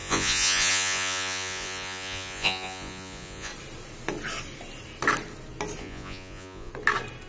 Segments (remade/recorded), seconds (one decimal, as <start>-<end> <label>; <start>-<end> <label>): 0.0-3.5 remade; 3.5-5.8 recorded; 5.8-6.7 remade; 6.7-7.3 recorded